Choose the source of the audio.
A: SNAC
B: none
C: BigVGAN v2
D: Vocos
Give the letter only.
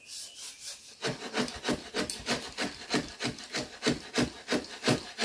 B